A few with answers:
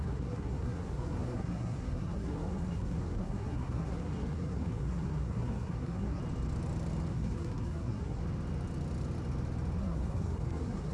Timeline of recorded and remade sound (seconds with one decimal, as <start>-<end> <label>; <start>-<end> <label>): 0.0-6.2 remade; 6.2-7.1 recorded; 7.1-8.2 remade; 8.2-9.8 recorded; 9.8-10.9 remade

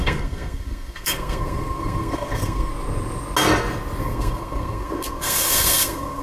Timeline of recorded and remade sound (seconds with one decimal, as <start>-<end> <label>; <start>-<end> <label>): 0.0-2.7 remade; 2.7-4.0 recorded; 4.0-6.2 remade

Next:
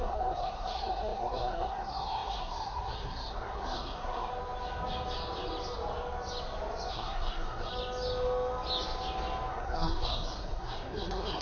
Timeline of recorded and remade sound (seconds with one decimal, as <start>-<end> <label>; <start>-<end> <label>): 0.0-4.3 remade; 4.3-6.9 recorded; 6.9-7.7 remade; 7.7-9.5 recorded; 9.5-11.4 remade

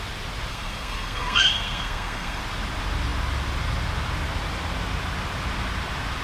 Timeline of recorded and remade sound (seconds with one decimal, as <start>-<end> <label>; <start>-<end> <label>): 0.0-0.5 recorded; 0.5-2.4 remade; 2.4-6.2 recorded